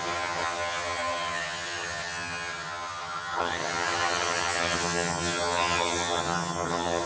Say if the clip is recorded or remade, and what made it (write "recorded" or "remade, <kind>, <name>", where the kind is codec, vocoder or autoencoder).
remade, vocoder, HiFi-GAN